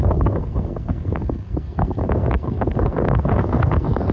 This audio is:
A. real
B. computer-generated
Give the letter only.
B